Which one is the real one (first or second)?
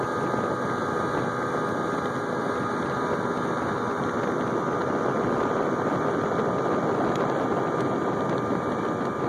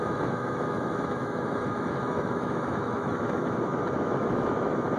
first